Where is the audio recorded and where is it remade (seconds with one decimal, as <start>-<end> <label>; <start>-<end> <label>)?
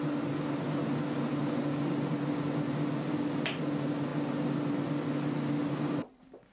0.0-6.5 recorded